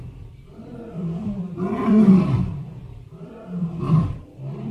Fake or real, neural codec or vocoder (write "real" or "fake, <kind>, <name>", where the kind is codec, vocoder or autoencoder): fake, vocoder, BigVGAN v2